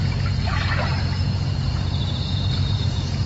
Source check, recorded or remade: remade